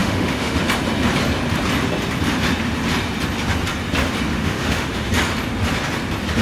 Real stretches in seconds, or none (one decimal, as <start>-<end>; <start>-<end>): 0.6-4.3; 5.1-6.4